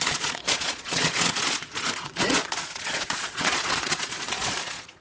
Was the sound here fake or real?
fake